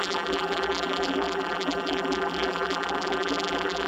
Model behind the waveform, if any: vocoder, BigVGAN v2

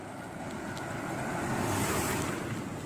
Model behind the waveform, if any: none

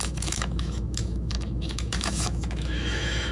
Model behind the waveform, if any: autoencoder, DAC-VAE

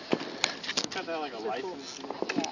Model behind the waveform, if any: none